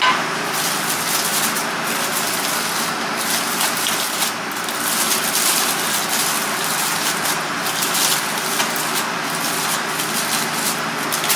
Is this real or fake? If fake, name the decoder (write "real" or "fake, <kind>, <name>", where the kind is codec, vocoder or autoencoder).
real